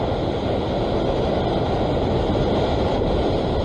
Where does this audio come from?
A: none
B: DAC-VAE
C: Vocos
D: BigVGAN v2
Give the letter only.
A